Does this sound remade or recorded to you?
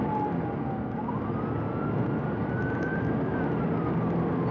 recorded